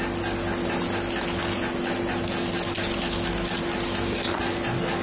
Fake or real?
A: real